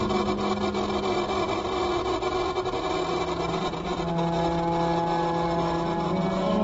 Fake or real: real